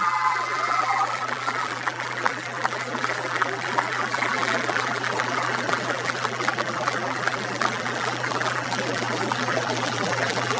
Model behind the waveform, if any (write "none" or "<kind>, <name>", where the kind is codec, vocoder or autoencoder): vocoder, BigVGAN v2